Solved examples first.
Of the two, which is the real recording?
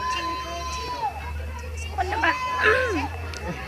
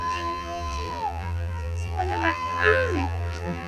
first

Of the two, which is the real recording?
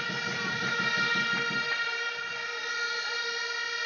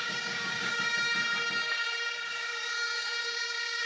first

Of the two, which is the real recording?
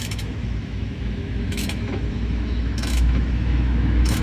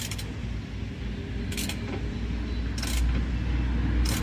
second